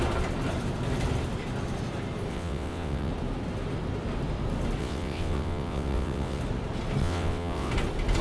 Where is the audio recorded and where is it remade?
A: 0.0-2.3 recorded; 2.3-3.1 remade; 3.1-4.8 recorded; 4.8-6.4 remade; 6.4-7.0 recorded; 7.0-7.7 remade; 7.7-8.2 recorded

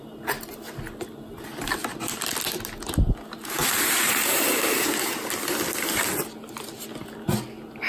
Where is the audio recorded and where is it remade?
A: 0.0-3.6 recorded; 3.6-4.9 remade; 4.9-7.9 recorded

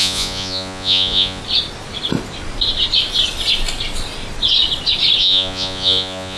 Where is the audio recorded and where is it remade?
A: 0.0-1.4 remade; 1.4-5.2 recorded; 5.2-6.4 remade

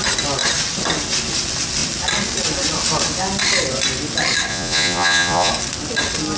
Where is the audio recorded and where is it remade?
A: 0.0-4.5 recorded; 4.5-5.5 remade; 5.5-6.4 recorded